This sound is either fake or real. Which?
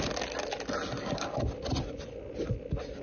real